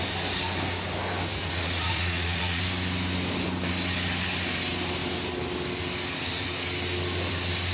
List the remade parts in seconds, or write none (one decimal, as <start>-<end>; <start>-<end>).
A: 1.3-2.6